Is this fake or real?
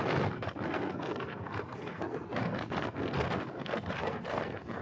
fake